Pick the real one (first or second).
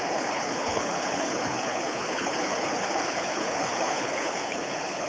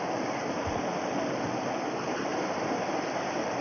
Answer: second